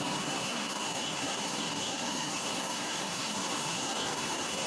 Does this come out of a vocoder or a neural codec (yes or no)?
yes